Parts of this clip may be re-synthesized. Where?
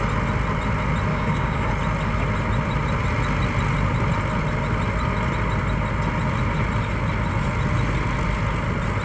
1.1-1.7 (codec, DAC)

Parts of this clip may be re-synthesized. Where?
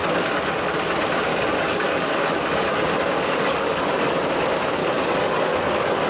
0.0-0.6 (codec, DAC); 1.3-4.2; 4.8-6.1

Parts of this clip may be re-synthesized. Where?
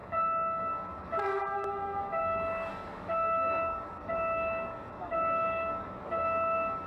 0.0-6.9 (codec, DAC)